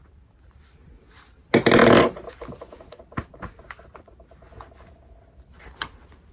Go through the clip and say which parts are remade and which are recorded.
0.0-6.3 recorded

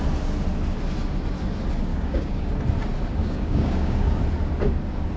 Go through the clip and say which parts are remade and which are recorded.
0.0-1.9 recorded; 1.9-2.5 remade; 2.5-3.2 recorded; 3.2-4.2 remade; 4.2-5.2 recorded

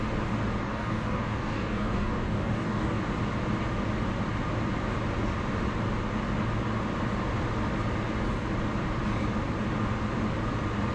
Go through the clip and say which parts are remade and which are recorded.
0.0-0.6 recorded; 0.6-3.0 remade; 3.0-10.9 recorded

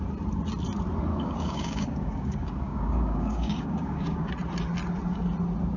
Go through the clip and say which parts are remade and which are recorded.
0.0-1.1 recorded; 1.1-4.3 remade; 4.3-5.8 recorded

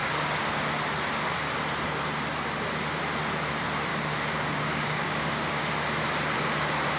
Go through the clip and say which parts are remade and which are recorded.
0.0-0.7 remade; 0.7-3.9 recorded; 3.9-5.3 remade; 5.3-7.0 recorded

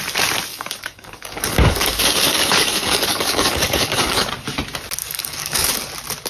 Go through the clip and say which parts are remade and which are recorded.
0.0-0.5 recorded; 0.5-4.3 remade; 4.3-5.0 recorded; 5.0-5.7 remade; 5.7-6.3 recorded

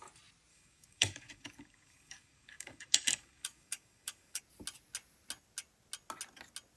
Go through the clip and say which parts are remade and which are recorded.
0.0-0.5 recorded; 0.5-4.4 remade; 4.4-6.8 recorded